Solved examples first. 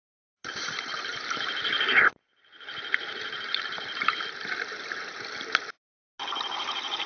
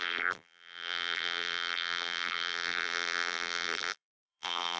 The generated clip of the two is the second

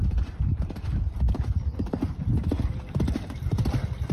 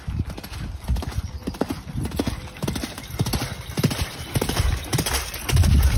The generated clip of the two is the first